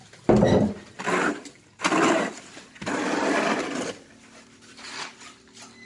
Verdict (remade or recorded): recorded